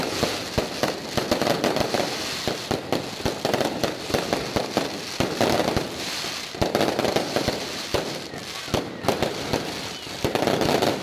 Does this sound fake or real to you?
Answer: real